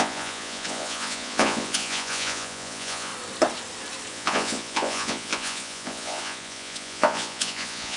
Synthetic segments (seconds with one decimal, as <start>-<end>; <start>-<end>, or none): 0.0-3.1; 4.1-8.0